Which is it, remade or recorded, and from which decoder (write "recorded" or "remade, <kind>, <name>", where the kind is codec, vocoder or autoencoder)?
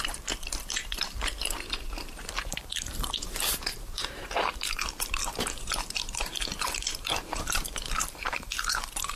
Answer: remade, vocoder, BigVGAN v2